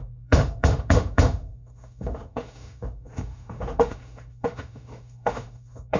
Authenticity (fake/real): fake